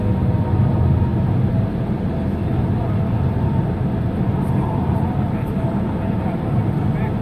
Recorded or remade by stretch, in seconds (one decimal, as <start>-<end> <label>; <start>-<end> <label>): 0.0-7.2 recorded